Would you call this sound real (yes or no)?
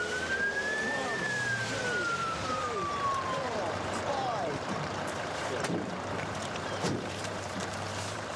no